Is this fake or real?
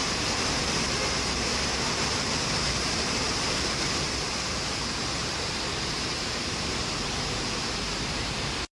fake